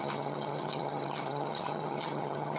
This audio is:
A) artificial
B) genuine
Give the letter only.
A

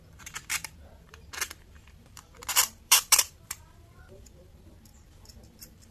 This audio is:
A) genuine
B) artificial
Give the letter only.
B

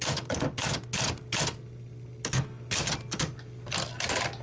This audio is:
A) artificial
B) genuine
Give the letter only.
B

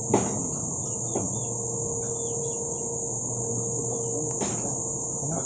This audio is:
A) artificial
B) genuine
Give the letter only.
B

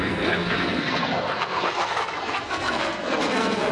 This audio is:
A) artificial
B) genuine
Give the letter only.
A